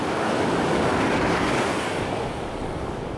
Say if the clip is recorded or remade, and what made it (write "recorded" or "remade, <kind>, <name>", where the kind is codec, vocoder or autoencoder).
remade, codec, DAC